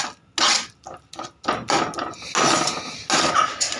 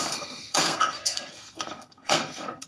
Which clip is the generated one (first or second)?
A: second